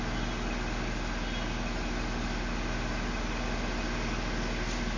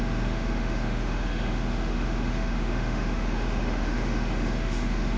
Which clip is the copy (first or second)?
second